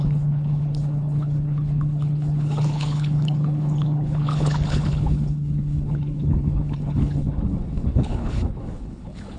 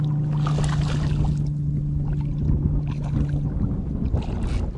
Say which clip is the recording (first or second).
second